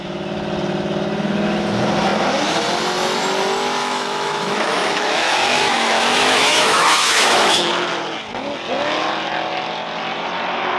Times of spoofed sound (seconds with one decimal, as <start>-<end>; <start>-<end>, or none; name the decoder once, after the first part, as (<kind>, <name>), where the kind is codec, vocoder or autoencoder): 3.8-7.7 (autoencoder, DAC-VAE)